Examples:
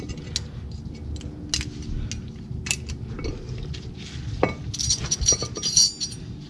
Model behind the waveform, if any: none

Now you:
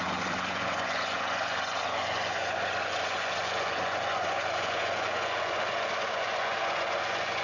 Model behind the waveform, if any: vocoder, Vocos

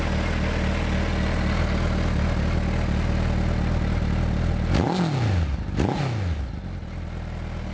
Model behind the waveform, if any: none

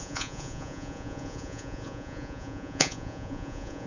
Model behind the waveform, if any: vocoder, Vocos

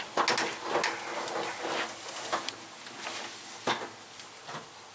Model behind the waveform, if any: none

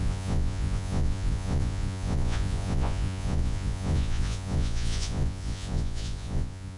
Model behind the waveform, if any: vocoder, Vocos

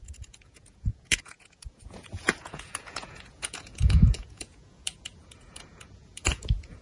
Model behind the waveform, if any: vocoder, Vocos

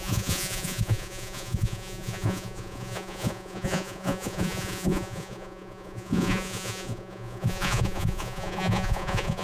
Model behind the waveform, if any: vocoder, Vocos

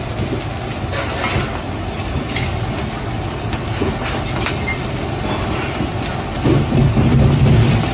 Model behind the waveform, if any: none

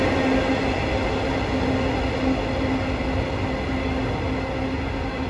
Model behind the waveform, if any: none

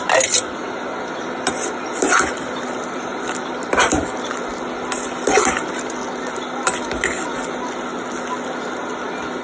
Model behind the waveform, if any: none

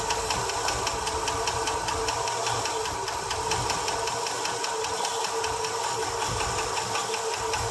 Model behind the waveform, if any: none